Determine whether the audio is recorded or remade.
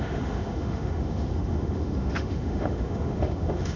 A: remade